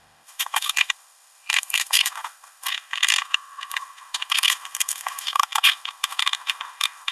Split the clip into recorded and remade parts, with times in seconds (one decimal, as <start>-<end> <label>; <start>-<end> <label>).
0.0-7.1 remade